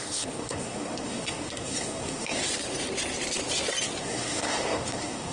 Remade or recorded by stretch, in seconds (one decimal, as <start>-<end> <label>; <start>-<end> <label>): 0.0-2.4 remade; 2.4-4.0 recorded; 4.0-5.3 remade